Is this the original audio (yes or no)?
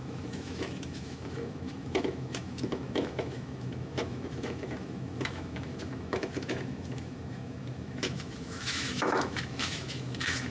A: no